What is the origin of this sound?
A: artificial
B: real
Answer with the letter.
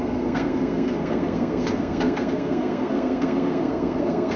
A